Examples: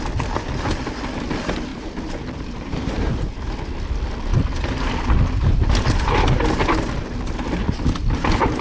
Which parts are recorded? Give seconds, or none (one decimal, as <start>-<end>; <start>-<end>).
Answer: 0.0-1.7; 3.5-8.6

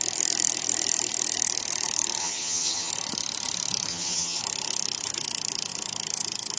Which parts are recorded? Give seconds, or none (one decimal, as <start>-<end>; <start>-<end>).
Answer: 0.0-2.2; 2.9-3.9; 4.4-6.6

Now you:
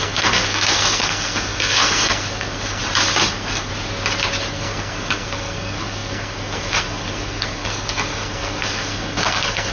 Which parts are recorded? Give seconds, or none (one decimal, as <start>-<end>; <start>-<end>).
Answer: 2.8-3.3; 3.7-4.5

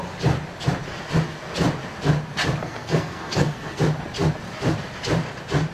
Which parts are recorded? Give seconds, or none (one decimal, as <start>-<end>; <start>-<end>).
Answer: 0.0-2.6; 3.8-5.7